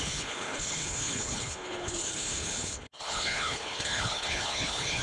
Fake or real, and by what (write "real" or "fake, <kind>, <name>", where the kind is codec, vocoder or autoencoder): fake, codec, HILCodec